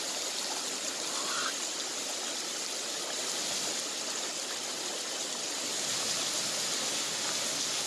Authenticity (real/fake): real